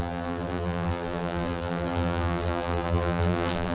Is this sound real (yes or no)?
no